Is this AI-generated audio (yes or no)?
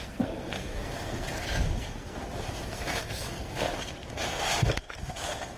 yes